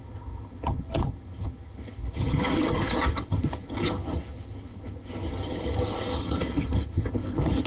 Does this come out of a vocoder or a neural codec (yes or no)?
yes